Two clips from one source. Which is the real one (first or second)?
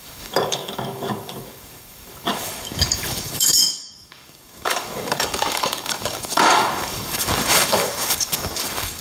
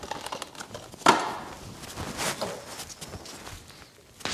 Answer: second